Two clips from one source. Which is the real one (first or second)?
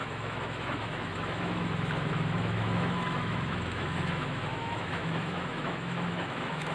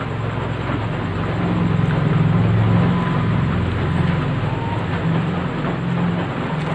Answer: second